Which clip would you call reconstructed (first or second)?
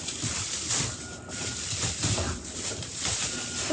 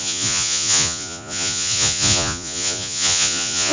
second